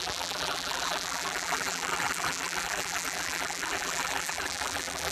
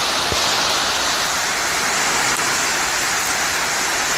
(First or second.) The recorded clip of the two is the second